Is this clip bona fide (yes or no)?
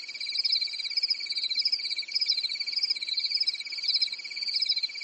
yes